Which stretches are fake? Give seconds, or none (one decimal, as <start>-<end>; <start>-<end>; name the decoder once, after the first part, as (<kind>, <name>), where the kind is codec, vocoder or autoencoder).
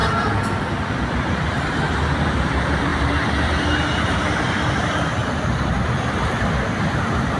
0.0-2.9 (vocoder, BigVGAN v2); 4.5-7.4